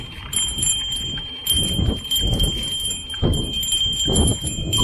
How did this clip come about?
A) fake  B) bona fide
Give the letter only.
B